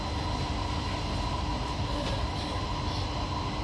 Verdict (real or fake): real